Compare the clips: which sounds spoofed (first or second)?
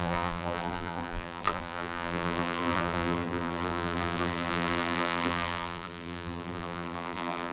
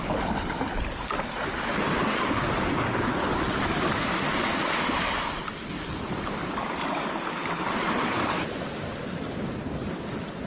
first